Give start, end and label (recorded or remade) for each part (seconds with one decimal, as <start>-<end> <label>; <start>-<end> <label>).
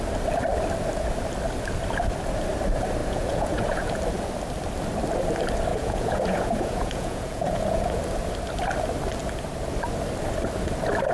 0.0-3.0 recorded; 3.0-4.0 remade; 4.0-5.7 recorded; 5.7-8.0 remade; 8.0-11.1 recorded